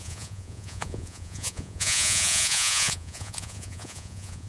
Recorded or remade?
remade